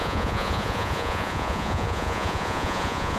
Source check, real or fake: fake